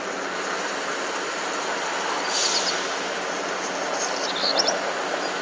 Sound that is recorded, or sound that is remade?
recorded